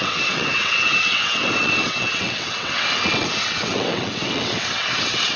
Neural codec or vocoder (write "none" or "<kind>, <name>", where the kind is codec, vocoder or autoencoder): vocoder, WaveNeXt